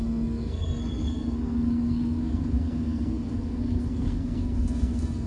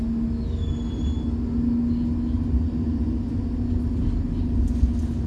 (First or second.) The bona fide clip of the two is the second